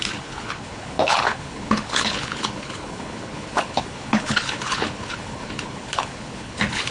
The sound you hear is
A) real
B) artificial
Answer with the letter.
B